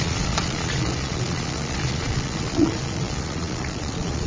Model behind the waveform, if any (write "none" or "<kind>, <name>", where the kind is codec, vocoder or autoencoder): vocoder, Vocos